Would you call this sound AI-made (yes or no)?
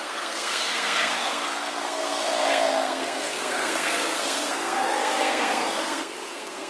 yes